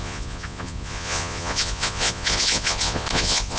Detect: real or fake fake